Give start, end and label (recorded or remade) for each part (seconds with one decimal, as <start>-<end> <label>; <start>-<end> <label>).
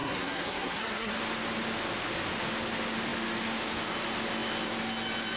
0.0-1.2 remade; 1.2-5.4 recorded